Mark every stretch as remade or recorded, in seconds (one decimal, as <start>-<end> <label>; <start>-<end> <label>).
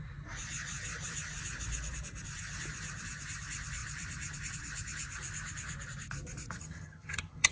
0.0-6.6 recorded; 6.6-7.5 remade